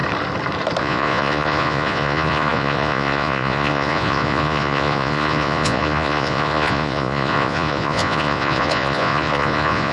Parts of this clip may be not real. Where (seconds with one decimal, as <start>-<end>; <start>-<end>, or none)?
0.8-9.9